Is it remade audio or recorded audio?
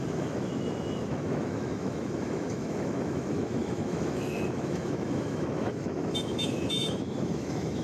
remade